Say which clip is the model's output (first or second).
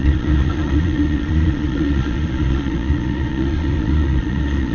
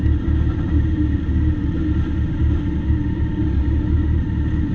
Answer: first